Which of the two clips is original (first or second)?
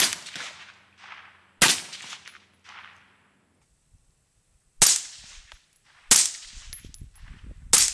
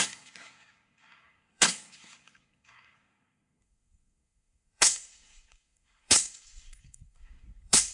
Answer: first